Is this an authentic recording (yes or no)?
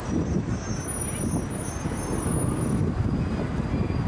yes